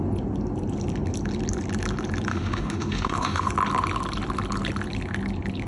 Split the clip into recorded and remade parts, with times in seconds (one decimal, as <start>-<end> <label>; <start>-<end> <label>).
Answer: 0.0-2.3 recorded; 2.3-3.5 remade; 3.5-5.7 recorded